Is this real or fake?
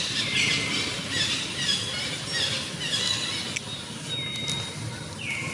real